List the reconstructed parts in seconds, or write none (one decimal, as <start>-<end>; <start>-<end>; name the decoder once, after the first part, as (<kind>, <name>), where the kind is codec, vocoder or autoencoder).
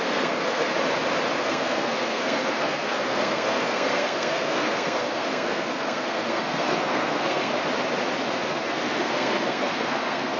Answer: 0.0-0.7 (codec, SNAC); 1.4-7.5; 8.5-10.4